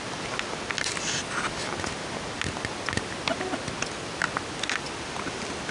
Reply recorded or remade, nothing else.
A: recorded